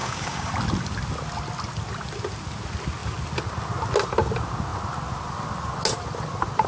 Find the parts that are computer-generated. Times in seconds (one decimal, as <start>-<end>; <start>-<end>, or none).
0.0-0.5